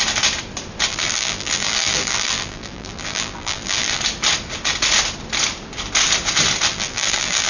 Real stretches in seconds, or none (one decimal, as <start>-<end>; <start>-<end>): 0.0-0.9; 4.0-6.7